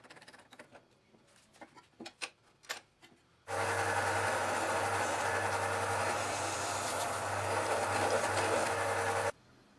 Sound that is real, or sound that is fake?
real